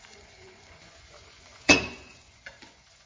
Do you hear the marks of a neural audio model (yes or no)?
yes